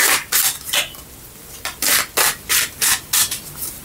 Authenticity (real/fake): real